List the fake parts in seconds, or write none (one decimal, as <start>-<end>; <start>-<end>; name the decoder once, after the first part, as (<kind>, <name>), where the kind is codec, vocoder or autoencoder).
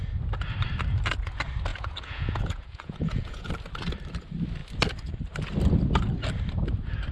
1.7-3.5 (vocoder, Vocos)